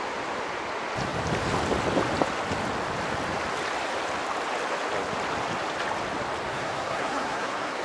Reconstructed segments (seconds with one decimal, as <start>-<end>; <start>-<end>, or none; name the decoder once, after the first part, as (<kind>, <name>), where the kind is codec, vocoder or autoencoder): 6.5-7.8 (codec, SNAC)